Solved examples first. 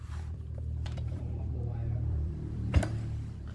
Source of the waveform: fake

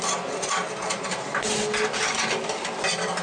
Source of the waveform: real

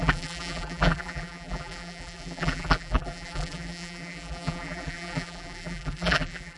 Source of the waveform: fake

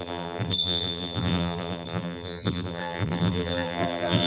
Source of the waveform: fake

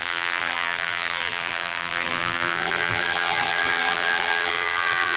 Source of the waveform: fake